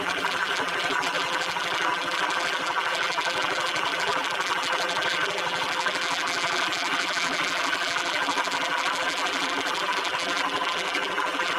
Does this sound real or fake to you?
fake